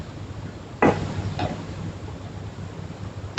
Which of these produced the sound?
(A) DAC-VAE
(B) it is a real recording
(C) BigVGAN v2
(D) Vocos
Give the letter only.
B